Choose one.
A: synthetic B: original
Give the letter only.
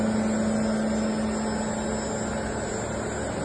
B